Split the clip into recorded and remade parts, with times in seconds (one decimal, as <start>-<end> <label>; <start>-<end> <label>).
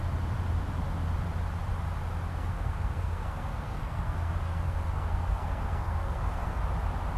0.0-2.3 recorded; 2.3-6.6 remade; 6.6-7.2 recorded